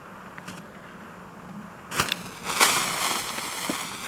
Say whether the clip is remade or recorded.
recorded